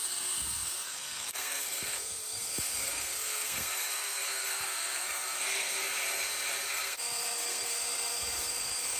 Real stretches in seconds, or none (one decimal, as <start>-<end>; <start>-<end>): 5.8-6.7